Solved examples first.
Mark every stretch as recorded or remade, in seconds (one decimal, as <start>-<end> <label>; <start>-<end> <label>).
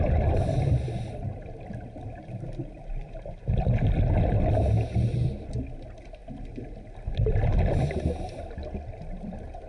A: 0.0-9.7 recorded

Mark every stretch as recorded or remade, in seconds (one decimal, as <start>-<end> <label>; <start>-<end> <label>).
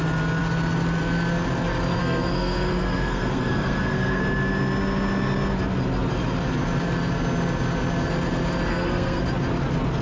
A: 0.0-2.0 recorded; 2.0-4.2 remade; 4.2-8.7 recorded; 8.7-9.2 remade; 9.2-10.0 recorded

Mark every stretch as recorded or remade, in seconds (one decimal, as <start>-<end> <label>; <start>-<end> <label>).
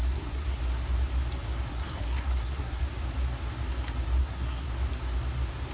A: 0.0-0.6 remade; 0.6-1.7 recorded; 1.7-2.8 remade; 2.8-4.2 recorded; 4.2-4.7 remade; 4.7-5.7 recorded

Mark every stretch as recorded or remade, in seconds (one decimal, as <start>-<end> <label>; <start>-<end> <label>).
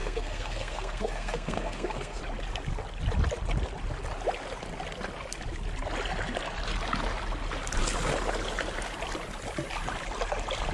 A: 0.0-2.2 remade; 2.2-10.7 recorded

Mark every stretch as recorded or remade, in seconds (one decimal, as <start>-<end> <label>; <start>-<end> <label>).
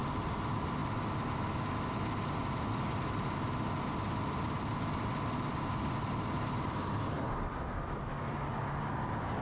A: 0.0-9.4 recorded